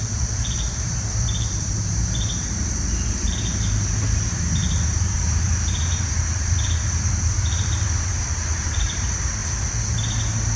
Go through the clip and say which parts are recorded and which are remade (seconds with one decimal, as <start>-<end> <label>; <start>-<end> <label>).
0.0-9.4 remade; 9.4-10.6 recorded